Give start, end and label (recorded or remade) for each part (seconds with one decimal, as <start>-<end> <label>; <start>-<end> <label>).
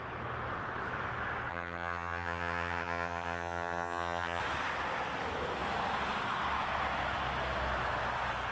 0.0-1.5 recorded; 1.5-4.4 remade; 4.4-8.5 recorded